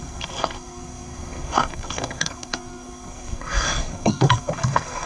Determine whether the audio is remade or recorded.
remade